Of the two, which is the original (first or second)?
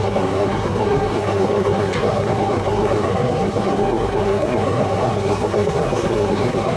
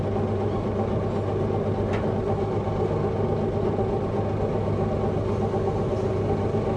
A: second